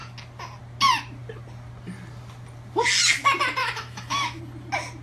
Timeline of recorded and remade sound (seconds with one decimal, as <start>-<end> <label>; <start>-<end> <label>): 0.0-3.6 recorded; 3.6-4.4 remade; 4.4-5.0 recorded